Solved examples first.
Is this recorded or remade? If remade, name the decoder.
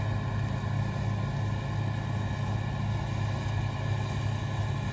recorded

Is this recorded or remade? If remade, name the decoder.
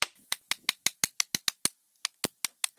recorded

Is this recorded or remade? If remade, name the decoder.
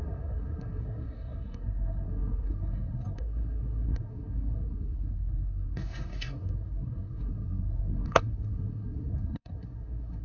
remade, codec, SNAC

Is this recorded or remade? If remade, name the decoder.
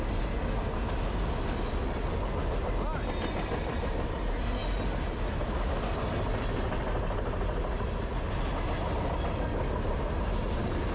recorded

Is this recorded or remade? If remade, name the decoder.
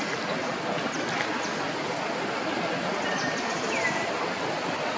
recorded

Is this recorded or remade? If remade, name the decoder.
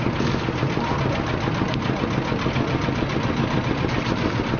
recorded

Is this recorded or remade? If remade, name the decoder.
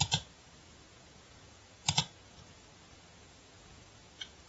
remade, vocoder, Vocos